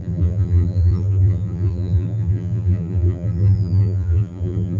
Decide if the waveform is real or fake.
fake